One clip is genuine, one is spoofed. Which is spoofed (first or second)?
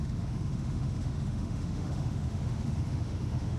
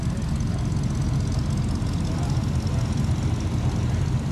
first